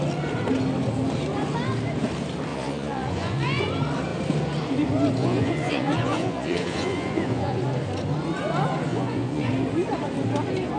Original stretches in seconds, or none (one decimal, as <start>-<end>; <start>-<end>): 0.0-2.5; 3.6-5.2; 7.6-8.9; 9.5-10.8